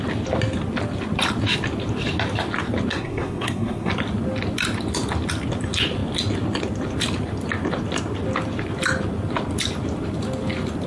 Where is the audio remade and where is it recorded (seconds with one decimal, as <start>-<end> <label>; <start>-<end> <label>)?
0.0-2.9 recorded; 2.9-3.9 remade; 3.9-10.9 recorded